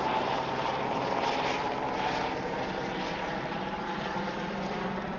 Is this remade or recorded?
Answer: recorded